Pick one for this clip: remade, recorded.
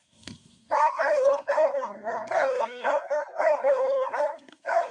remade